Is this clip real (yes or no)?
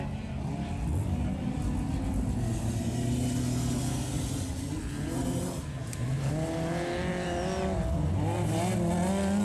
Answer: yes